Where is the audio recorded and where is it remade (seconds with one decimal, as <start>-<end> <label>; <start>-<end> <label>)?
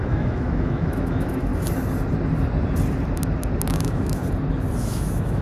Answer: 0.0-1.5 remade; 1.5-3.7 recorded; 3.7-4.2 remade; 4.2-4.8 recorded; 4.8-5.4 remade